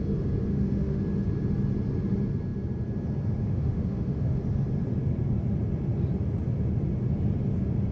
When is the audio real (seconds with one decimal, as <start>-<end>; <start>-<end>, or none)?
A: 0.0-0.5; 1.0-3.4; 4.4-7.9